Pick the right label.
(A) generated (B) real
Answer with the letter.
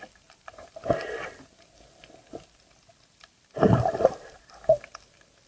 B